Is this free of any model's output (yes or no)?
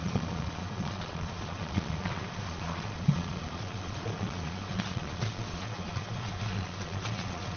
no